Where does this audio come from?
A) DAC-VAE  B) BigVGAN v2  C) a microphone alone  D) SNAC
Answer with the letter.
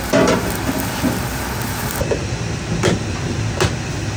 C